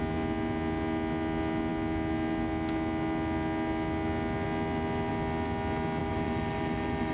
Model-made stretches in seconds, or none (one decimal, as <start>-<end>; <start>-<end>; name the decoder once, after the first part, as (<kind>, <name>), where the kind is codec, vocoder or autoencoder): 6.0-7.1 (vocoder, BigVGAN v2)